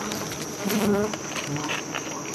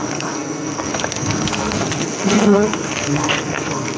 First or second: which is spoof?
second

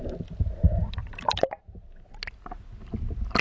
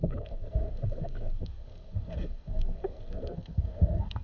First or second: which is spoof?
second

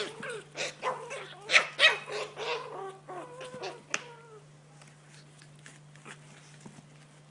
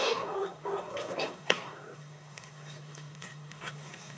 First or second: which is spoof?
second